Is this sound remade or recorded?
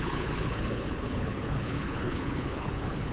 remade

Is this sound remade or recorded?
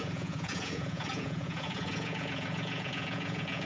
remade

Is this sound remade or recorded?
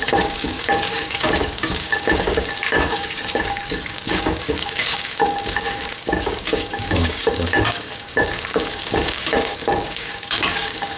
remade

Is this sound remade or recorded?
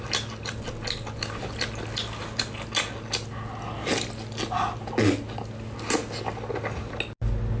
recorded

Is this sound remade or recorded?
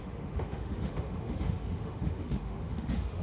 remade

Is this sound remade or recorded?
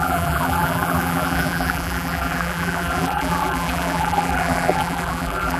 remade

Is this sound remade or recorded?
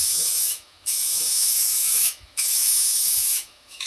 remade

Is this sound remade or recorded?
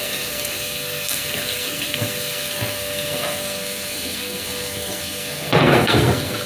remade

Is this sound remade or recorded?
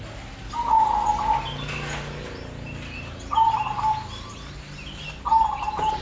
recorded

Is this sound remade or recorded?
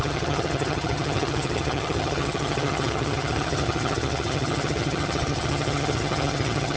remade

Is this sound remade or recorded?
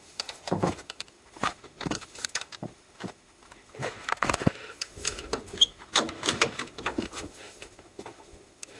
remade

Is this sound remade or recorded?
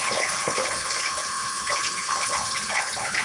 remade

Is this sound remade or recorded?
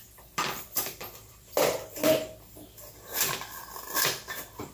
remade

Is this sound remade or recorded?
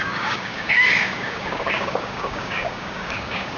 remade